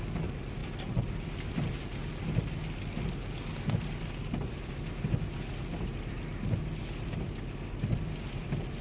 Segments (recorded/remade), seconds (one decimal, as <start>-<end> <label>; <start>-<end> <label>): 0.0-8.8 recorded